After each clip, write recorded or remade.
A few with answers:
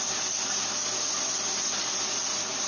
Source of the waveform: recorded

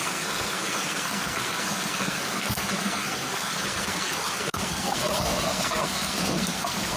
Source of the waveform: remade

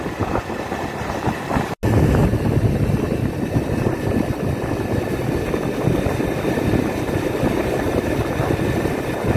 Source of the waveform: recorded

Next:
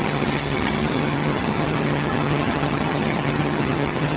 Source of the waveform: remade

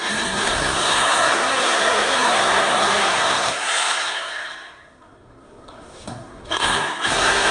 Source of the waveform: remade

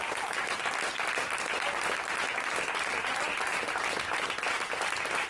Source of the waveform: recorded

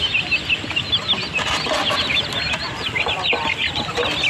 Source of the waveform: recorded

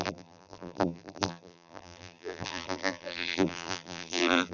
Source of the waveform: remade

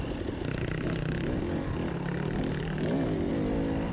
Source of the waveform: recorded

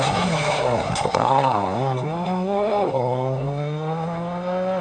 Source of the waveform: remade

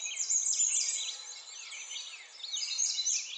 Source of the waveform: recorded